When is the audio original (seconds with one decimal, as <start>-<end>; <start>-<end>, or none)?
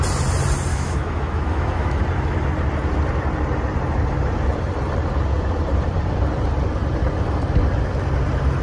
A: 0.0-0.7; 2.0-8.6